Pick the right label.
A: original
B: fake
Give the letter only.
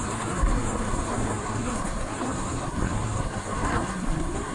B